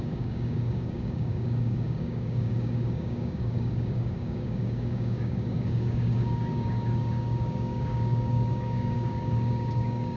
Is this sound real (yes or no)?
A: no